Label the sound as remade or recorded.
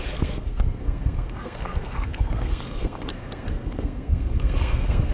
remade